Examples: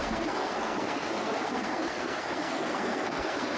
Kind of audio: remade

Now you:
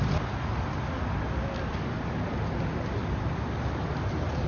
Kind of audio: recorded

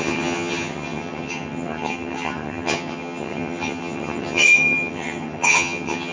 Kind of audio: remade